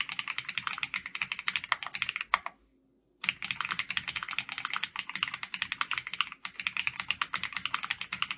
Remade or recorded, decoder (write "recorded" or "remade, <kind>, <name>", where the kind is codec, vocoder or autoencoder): recorded